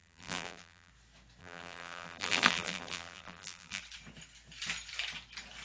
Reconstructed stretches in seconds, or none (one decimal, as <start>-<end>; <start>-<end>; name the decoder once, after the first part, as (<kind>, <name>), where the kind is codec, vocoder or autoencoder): 0.0-0.9 (vocoder, BigVGAN v2); 1.4-3.8